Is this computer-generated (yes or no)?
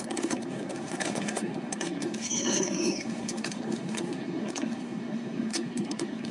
yes